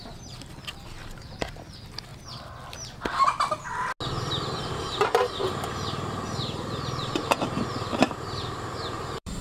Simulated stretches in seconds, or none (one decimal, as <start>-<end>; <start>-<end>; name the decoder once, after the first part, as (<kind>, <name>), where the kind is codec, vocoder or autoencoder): 0.0-2.1 (vocoder, BigVGAN v2); 4.6-5.4; 7.7-9.4